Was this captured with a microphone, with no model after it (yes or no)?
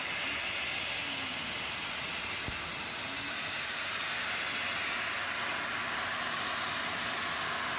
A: yes